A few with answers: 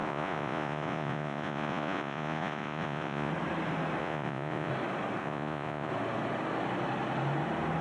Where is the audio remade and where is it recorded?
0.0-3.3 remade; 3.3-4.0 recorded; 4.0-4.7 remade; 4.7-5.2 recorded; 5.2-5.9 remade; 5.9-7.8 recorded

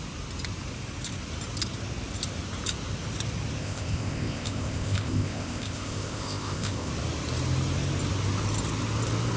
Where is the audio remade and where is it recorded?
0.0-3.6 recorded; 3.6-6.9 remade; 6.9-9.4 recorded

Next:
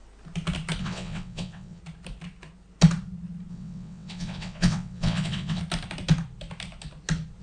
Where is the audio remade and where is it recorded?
0.0-0.8 recorded; 0.8-1.8 remade; 1.8-3.5 recorded; 3.5-5.6 remade; 5.6-7.4 recorded

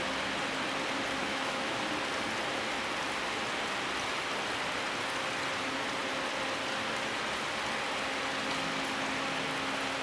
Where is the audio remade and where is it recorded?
0.0-1.2 recorded; 1.2-1.8 remade; 1.8-10.0 recorded